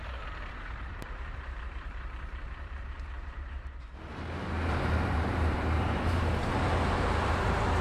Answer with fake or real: fake